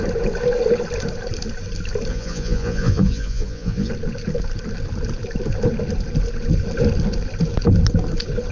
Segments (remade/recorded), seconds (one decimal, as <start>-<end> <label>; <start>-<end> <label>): 0.0-2.1 recorded; 2.1-3.9 remade; 3.9-8.5 recorded